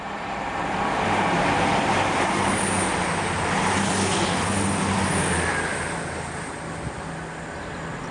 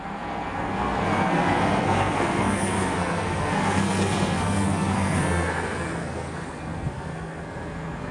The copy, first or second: second